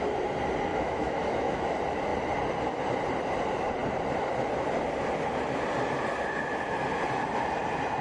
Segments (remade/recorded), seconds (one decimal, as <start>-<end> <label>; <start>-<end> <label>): 0.0-0.7 recorded; 0.7-1.7 remade; 1.7-8.0 recorded